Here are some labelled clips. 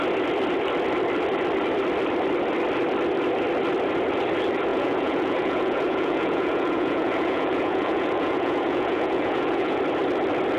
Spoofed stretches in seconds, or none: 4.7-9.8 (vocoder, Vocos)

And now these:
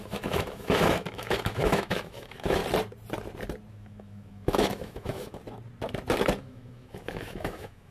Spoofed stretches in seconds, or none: 0.0-2.6 (autoencoder, DAC-VAE); 3.7-5.4; 6.4-7.9

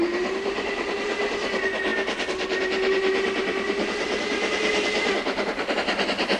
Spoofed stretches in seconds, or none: none

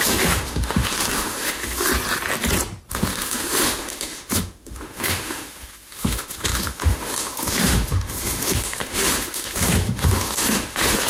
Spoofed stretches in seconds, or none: 0.0-1.9 (autoencoder, DAC-VAE); 2.9-11.1

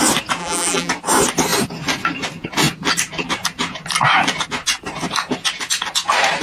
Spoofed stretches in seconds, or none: 0.4-0.9 (vocoder, BigVGAN v2)

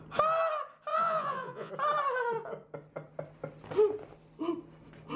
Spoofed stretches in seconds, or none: 0.9-1.7 (vocoder, Vocos)

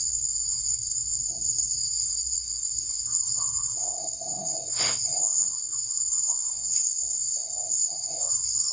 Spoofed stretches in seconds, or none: 0.0-8.7 (codec, SNAC)